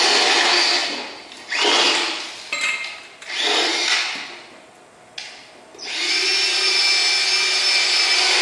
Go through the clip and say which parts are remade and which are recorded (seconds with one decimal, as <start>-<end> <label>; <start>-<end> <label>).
0.0-8.4 recorded